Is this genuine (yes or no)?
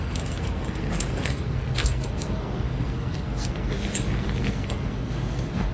no